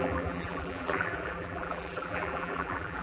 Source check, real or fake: fake